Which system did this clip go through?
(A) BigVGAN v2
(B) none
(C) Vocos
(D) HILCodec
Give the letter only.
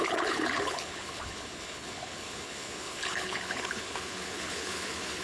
D